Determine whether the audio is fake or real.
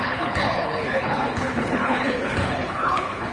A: fake